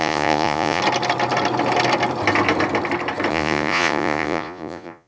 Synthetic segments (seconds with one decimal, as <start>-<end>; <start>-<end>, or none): 0.0-0.8; 3.3-5.1